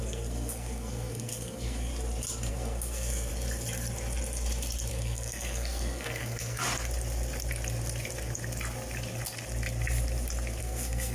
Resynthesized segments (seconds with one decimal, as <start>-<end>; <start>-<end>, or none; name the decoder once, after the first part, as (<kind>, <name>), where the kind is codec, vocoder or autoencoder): 0.0-1.9 (codec, SNAC); 2.5-3.3; 4.9-6.6; 10.6-11.1